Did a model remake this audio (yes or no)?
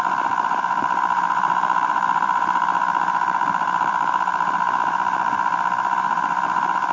yes